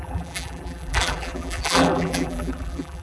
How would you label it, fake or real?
fake